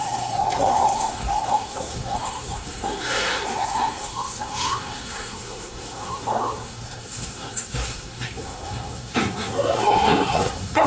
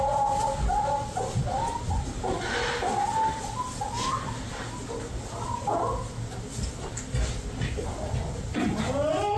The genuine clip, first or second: second